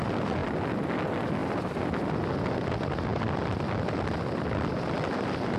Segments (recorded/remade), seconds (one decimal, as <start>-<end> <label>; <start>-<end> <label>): 0.0-5.6 recorded